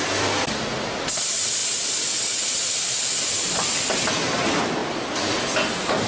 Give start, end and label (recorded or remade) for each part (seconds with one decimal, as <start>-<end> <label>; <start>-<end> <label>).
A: 0.0-6.1 recorded